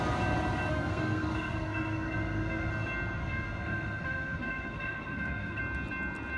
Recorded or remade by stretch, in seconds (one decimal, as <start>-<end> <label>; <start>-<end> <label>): 0.0-0.7 recorded; 0.7-2.7 remade; 2.7-3.2 recorded; 3.2-5.6 remade; 5.6-6.4 recorded